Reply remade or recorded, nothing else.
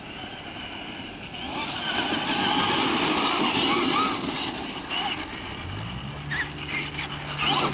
recorded